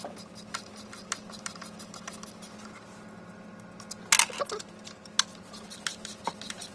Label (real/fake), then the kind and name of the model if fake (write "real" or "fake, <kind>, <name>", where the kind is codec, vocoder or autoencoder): real